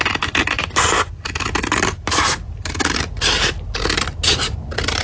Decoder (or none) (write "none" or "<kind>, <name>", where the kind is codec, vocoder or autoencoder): none